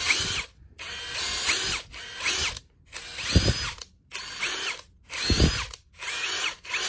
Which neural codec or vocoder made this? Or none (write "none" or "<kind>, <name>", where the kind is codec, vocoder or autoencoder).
none